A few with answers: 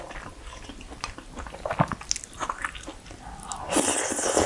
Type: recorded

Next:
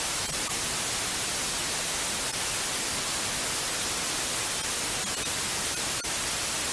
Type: recorded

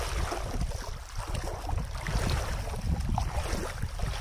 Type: recorded